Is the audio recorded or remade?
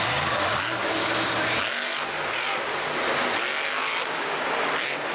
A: recorded